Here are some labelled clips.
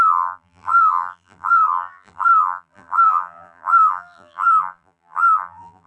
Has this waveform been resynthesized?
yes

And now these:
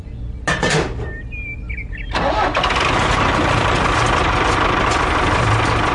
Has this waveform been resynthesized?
no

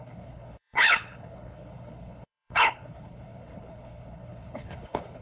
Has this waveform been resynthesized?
yes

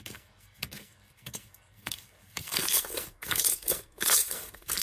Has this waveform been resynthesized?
yes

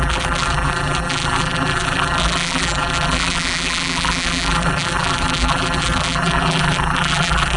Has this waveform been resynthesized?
yes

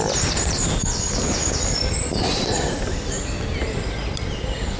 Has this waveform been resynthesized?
no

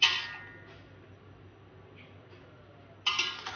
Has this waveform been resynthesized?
no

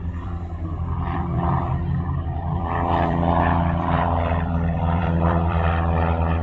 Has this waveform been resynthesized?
yes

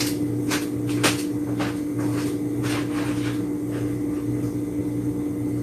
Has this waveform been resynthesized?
no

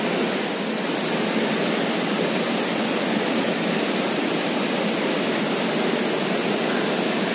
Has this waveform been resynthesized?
no